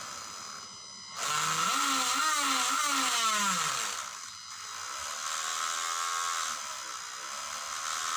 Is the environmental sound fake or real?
real